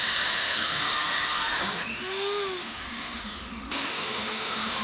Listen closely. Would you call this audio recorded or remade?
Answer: remade